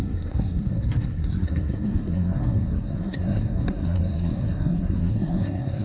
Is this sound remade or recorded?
remade